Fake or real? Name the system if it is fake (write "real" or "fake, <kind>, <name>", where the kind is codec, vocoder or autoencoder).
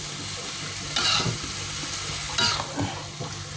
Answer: real